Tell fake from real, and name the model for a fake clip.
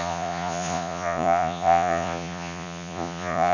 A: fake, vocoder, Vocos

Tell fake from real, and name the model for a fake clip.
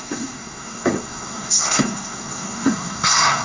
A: fake, codec, SNAC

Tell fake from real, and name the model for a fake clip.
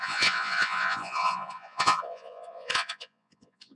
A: fake, vocoder, Vocos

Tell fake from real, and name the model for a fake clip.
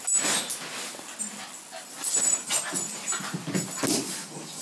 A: real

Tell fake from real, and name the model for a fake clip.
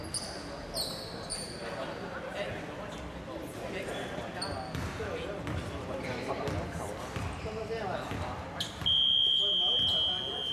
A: real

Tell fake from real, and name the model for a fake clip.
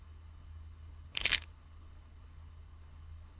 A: fake, codec, HILCodec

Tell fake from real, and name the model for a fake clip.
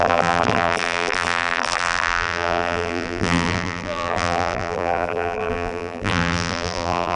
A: fake, vocoder, BigVGAN v2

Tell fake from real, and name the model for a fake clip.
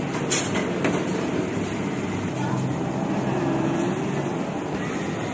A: real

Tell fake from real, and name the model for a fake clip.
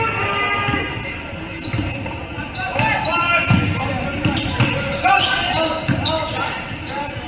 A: real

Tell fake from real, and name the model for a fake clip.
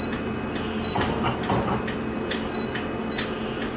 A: real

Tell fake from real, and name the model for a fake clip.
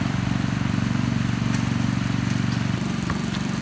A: fake, vocoder, BigVGAN v2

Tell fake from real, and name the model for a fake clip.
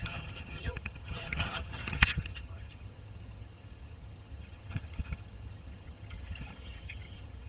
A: fake, vocoder, HiFi-GAN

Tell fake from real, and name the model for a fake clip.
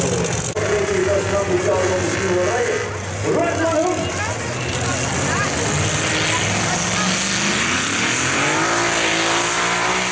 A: real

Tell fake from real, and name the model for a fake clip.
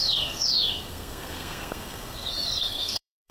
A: fake, codec, SNAC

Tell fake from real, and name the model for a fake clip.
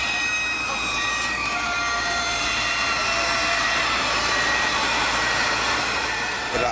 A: fake, vocoder, BigVGAN v2